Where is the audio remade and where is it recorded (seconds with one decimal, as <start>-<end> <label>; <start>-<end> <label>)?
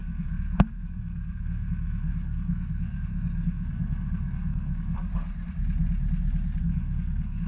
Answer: 0.0-5.1 remade; 5.1-6.6 recorded; 6.6-7.5 remade